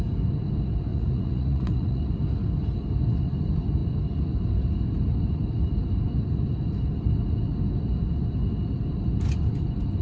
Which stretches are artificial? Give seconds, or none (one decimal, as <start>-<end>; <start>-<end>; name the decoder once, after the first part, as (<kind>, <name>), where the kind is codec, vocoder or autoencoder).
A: 0.9-2.0 (vocoder, Vocos)